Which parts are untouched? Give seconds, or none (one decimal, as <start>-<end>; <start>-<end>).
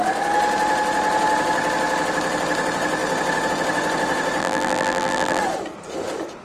0.0-4.4; 5.4-6.4